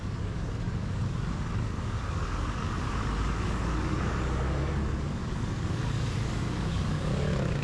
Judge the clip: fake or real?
fake